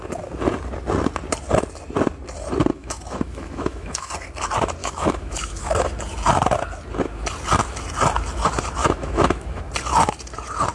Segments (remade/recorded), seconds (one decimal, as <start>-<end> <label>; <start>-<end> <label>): 0.0-2.7 recorded; 2.7-4.1 remade; 4.1-4.8 recorded; 4.8-5.7 remade; 5.7-8.8 recorded; 8.8-9.6 remade; 9.6-10.7 recorded